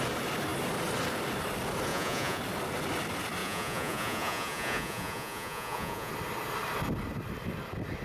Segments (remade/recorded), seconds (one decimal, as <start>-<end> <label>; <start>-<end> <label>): 0.0-1.9 recorded; 1.9-2.4 remade; 2.4-3.4 recorded; 3.4-6.1 remade; 6.1-8.0 recorded